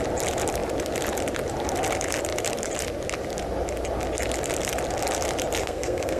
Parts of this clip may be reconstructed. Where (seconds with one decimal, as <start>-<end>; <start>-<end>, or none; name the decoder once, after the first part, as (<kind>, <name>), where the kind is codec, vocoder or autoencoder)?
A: 5.6-6.2 (codec, SNAC)